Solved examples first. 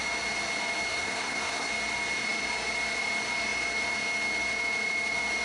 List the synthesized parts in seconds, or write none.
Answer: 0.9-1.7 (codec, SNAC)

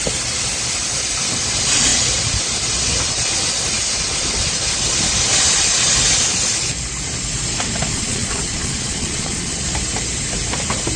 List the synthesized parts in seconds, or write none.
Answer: 7.9-9.6 (vocoder, Vocos)

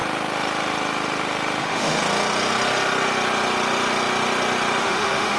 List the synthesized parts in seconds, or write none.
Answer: 1.6-2.0 (autoencoder, DAC-VAE); 4.8-5.4

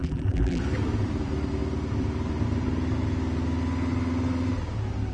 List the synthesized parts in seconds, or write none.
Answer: 0.0-0.6 (vocoder, BigVGAN v2)

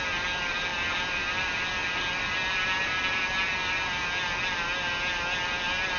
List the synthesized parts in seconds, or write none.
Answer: none

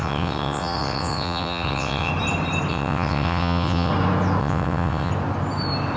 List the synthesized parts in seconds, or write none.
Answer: 0.0-2.1 (vocoder, WaveNeXt); 2.7-3.9; 4.4-5.1

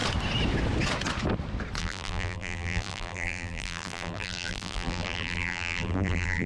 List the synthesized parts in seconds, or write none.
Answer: 1.8-6.5 (vocoder, BigVGAN v2)